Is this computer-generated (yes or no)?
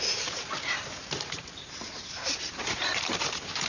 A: yes